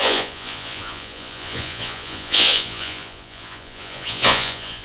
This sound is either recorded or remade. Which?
remade